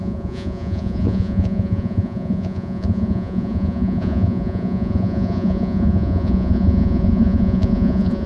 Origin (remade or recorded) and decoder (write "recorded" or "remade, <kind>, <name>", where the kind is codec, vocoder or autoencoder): remade, vocoder, Vocos